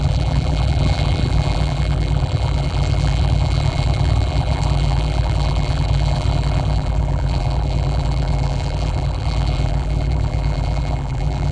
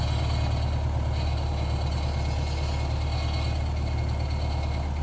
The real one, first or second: second